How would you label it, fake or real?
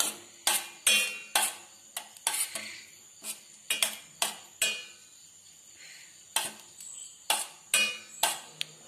real